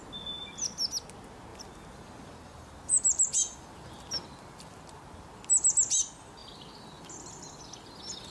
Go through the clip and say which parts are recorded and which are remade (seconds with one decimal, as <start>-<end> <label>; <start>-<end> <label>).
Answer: 0.0-1.5 recorded; 1.5-4.6 remade; 4.6-6.4 recorded; 6.4-7.6 remade; 7.6-8.3 recorded